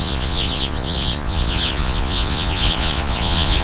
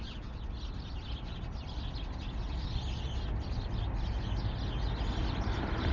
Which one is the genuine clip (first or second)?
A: second